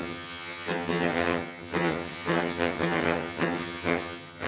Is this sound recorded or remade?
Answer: remade